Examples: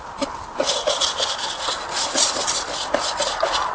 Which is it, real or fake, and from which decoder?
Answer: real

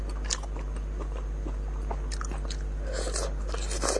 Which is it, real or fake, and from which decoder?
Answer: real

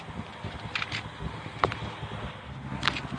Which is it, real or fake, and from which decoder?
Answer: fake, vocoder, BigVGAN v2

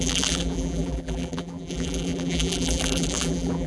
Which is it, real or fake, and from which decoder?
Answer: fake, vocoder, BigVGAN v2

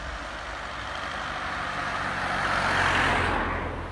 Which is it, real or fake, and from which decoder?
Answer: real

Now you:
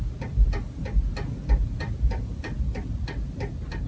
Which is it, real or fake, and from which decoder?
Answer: real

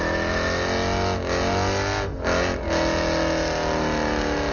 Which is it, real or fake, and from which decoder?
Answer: real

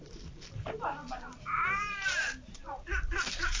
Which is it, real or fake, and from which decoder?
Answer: fake, vocoder, BigVGAN v2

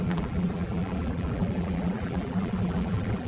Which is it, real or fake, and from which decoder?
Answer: fake, vocoder, BigVGAN v2